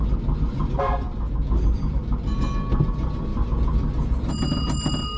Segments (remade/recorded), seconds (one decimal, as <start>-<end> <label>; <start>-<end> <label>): 0.0-5.2 recorded